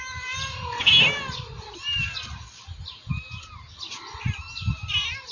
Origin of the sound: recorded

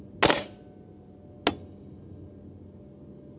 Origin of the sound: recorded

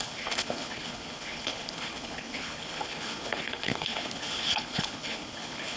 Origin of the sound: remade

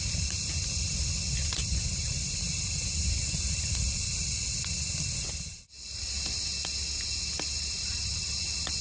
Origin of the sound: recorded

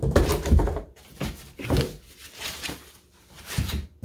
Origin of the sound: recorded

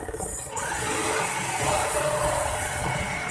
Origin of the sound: remade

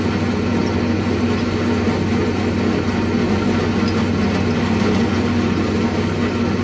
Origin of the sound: recorded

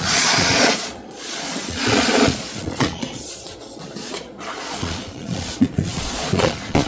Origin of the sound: remade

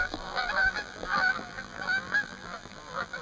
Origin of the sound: remade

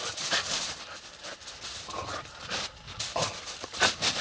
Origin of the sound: remade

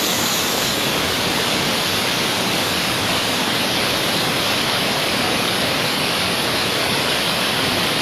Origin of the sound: remade